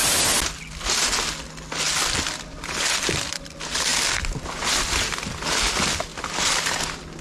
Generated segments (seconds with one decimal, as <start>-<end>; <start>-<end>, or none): none